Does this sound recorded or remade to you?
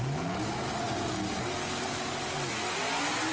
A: recorded